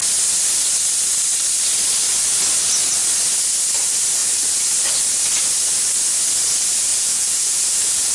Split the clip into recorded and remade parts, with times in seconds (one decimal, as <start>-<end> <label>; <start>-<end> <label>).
0.0-6.9 recorded; 6.9-8.1 remade